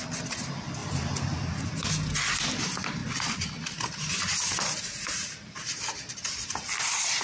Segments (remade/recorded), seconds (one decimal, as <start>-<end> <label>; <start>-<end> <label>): 0.0-7.2 recorded